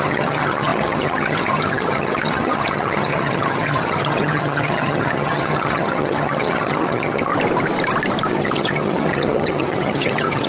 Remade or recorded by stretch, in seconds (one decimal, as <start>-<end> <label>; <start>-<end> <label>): 0.0-7.3 remade; 7.3-8.3 recorded; 8.3-10.5 remade